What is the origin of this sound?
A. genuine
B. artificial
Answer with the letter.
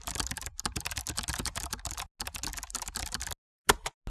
A